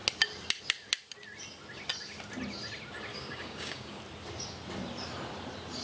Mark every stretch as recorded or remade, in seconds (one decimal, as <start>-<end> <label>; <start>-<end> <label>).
0.0-3.1 recorded; 3.1-4.0 remade; 4.0-5.8 recorded